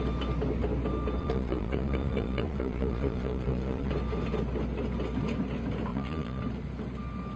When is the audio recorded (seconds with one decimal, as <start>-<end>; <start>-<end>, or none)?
0.0-1.2; 3.9-5.9; 6.4-7.4